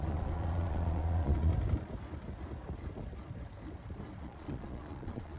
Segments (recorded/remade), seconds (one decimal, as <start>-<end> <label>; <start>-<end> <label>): 0.0-1.5 remade; 1.5-4.2 recorded; 4.2-5.4 remade